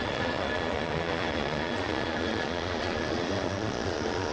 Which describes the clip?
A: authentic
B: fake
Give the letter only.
B